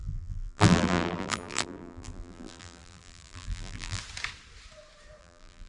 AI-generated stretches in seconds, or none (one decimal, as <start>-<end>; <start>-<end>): 0.0-4.0; 5.2-5.7